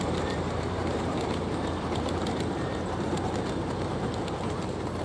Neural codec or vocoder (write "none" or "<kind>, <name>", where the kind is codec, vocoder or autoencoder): vocoder, BigVGAN v2